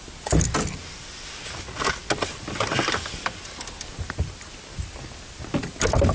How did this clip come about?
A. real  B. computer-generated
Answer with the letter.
A